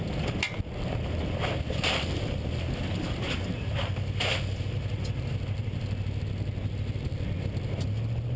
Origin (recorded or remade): recorded